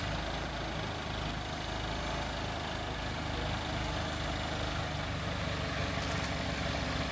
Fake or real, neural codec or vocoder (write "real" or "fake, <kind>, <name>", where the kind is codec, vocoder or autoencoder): real